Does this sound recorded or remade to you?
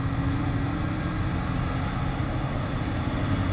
recorded